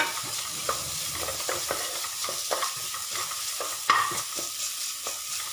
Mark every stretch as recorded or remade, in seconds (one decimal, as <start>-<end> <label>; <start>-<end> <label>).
0.0-5.5 recorded